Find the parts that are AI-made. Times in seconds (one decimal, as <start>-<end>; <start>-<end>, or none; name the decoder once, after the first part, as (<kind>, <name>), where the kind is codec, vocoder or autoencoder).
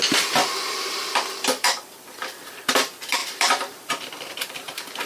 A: 0.4-2.5 (vocoder, BigVGAN v2); 3.2-5.1